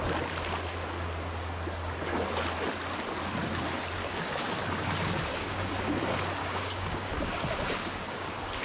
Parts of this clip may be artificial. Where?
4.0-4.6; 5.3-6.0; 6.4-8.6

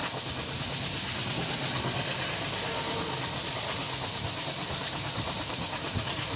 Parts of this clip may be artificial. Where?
none

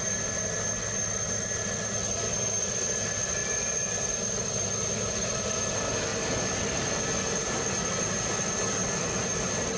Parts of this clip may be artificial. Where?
none